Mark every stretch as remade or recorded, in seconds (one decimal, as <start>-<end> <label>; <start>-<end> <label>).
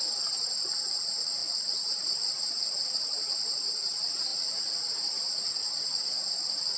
0.0-6.8 recorded